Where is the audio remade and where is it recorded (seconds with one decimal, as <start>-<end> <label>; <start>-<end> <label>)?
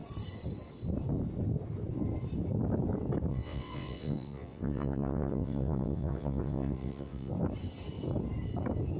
0.0-3.3 recorded; 3.3-7.3 remade; 7.3-9.0 recorded